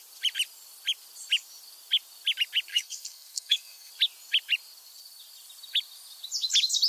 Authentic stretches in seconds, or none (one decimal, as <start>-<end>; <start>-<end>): 0.0-2.7; 3.9-6.9